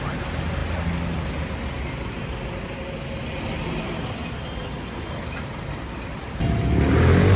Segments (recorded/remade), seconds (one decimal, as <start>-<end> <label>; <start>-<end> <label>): 0.0-7.4 recorded